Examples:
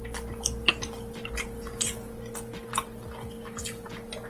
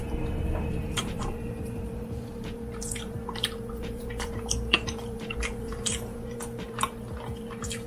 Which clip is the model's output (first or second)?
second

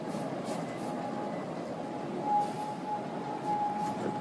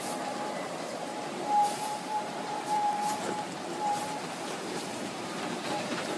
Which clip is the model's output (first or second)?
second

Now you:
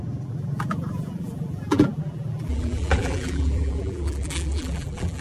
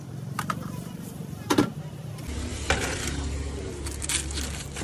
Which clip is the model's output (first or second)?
first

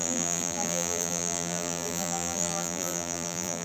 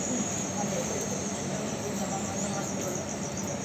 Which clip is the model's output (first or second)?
first